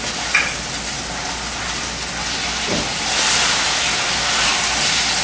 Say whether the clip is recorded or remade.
recorded